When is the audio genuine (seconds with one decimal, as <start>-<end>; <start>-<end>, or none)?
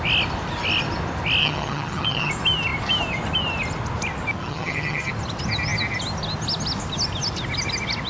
0.0-1.4; 2.3-4.4; 5.1-8.1